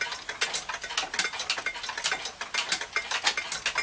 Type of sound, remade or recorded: recorded